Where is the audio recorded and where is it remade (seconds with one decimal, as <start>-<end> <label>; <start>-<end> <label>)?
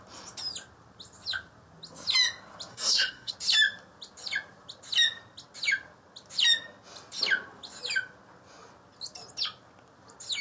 0.0-2.7 recorded; 2.7-3.3 remade; 3.3-10.4 recorded